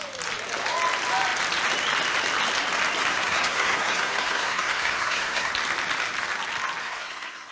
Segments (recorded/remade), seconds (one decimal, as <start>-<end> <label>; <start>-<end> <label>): 0.0-3.1 recorded; 3.1-5.5 remade; 5.5-6.8 recorded; 6.8-7.5 remade